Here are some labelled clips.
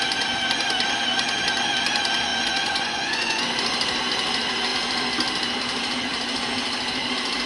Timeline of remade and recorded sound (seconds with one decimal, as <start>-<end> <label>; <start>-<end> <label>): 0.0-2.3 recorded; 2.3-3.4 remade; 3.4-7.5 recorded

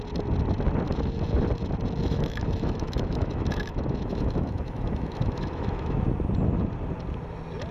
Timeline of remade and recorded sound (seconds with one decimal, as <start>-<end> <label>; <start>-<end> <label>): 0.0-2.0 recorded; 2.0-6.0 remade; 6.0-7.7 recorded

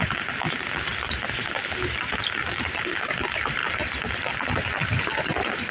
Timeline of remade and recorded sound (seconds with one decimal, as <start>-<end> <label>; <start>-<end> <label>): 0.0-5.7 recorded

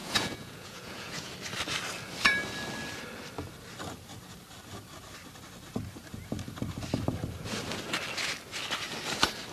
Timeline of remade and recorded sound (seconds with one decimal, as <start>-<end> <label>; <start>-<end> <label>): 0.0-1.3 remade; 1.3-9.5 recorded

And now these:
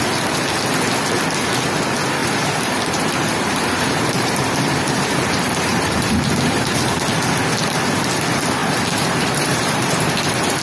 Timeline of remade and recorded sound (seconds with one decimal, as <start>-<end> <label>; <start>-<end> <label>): 0.0-2.2 recorded; 2.2-4.5 remade; 4.5-5.7 recorded; 5.7-6.7 remade; 6.7-8.6 recorded; 8.6-10.1 remade; 10.1-10.6 recorded

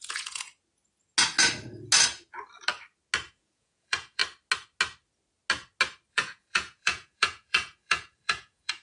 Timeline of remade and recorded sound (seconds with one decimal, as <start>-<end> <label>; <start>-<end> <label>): 0.0-0.5 remade; 0.5-3.3 recorded; 3.3-4.2 remade; 4.2-6.1 recorded; 6.1-8.8 remade